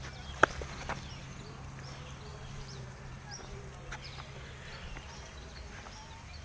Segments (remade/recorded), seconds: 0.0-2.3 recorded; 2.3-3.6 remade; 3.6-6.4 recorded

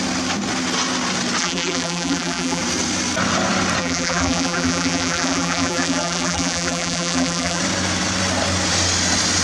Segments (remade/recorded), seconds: 0.0-1.4 recorded; 1.4-2.6 remade; 2.6-3.8 recorded; 3.8-7.6 remade; 7.6-9.4 recorded

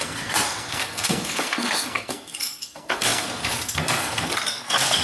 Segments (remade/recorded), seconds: 0.0-5.0 remade

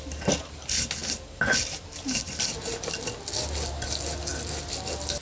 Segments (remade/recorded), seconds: 0.0-5.2 recorded